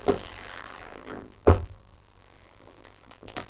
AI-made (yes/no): yes